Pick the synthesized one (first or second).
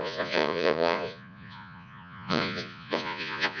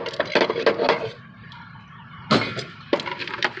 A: first